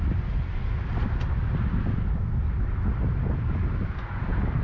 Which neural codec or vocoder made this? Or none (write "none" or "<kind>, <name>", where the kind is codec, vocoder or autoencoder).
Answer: none